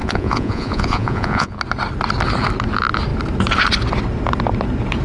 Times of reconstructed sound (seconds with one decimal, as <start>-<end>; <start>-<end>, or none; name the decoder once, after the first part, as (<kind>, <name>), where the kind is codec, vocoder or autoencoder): 0.0-1.6 (vocoder, Vocos)